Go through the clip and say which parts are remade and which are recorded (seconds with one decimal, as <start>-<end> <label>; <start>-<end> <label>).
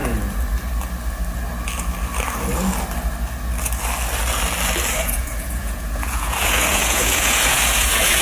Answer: 0.0-4.9 recorded; 4.9-8.2 remade